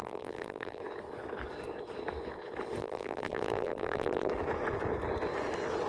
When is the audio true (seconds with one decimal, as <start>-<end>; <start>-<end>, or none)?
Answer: 0.8-2.8; 4.3-5.9